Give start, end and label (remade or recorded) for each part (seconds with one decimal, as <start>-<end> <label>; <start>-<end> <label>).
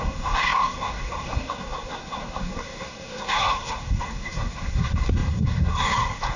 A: 0.0-6.4 remade